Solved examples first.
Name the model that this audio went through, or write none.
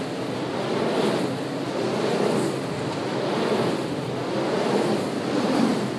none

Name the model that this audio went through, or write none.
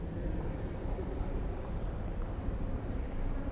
vocoder, BigVGAN v2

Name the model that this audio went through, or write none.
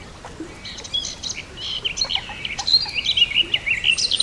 none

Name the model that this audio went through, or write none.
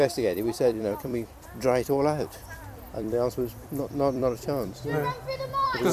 vocoder, BigVGAN v2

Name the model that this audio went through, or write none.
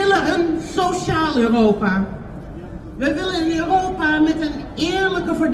none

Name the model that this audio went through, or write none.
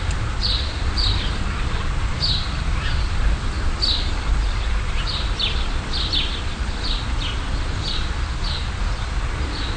none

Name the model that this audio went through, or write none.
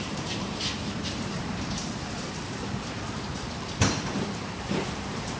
vocoder, BigVGAN v2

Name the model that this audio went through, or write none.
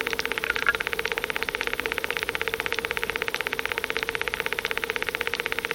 none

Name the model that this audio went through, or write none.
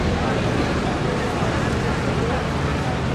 none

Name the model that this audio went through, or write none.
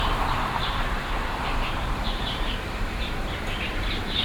vocoder, BigVGAN v2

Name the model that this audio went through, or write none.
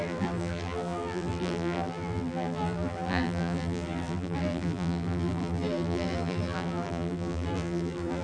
vocoder, BigVGAN v2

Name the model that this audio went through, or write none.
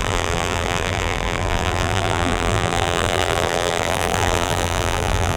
vocoder, BigVGAN v2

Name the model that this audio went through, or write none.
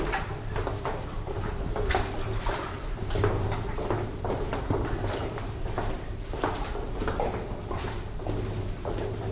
vocoder, BigVGAN v2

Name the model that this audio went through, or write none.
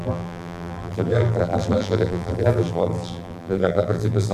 vocoder, BigVGAN v2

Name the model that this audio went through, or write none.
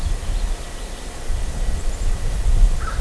vocoder, BigVGAN v2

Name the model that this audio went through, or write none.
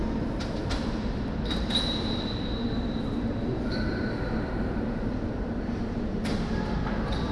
vocoder, BigVGAN v2